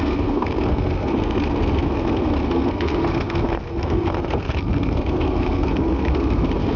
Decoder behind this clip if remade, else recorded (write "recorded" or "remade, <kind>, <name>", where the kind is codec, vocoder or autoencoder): remade, codec, SNAC